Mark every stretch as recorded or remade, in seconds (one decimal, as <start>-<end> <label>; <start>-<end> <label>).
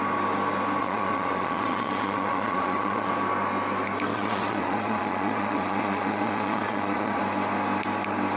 0.0-0.8 recorded; 0.8-3.1 remade; 3.1-4.1 recorded; 4.1-7.2 remade; 7.2-8.4 recorded